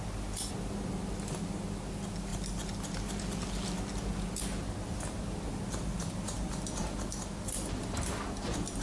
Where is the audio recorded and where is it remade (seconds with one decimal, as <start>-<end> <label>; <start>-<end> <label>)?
0.0-8.8 recorded